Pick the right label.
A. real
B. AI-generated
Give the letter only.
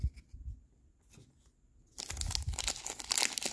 A